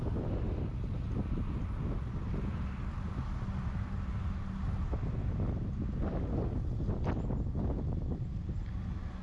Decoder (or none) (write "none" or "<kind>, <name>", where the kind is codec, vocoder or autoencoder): none